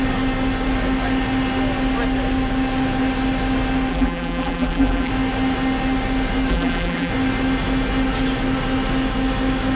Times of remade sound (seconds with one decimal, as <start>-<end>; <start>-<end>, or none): 3.9-5.1; 6.5-7.1